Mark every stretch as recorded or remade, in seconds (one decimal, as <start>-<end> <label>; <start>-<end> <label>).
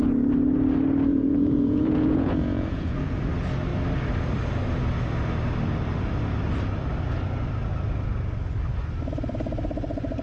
0.0-1.1 recorded; 1.1-3.2 remade; 3.2-10.2 recorded